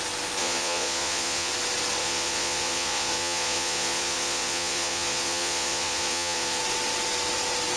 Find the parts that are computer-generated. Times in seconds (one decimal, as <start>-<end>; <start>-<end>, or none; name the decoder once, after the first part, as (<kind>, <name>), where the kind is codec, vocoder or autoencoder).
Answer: 0.4-1.5 (vocoder, Vocos); 2.0-6.6